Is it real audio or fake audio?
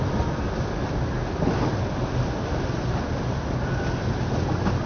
real